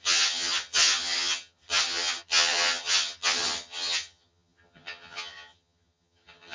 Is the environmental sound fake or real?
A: fake